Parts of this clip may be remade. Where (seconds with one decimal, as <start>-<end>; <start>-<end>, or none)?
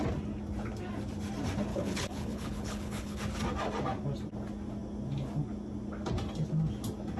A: 1.7-3.2